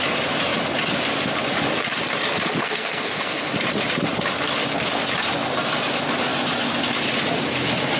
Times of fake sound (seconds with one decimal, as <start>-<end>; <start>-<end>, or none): 2.6-3.5